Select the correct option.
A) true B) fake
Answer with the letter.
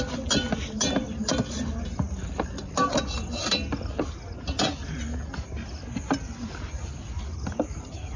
A